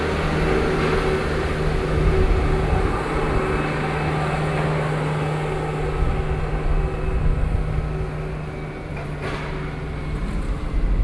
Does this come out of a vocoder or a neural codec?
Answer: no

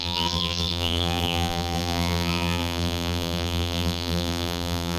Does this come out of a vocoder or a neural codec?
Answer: yes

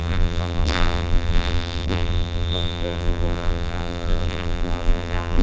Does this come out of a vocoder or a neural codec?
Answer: yes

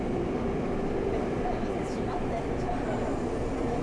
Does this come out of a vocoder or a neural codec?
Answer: no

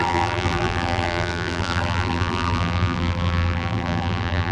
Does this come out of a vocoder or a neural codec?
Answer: yes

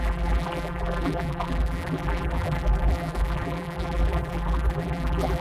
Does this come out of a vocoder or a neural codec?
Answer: yes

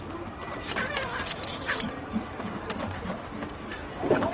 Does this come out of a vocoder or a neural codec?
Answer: yes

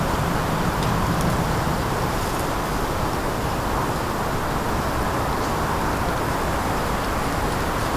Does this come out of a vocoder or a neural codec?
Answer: no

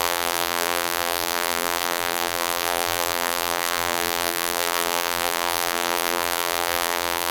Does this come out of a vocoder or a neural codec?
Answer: yes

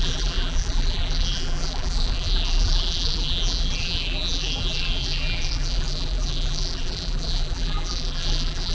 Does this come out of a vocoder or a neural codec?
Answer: yes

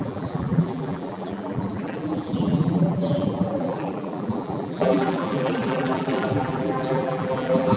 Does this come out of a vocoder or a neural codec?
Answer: yes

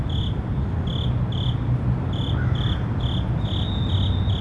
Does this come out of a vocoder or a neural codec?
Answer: no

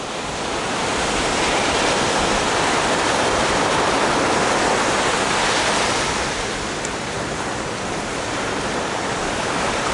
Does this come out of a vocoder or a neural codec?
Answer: yes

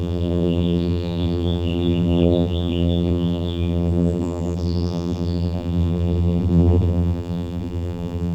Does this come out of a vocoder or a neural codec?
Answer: yes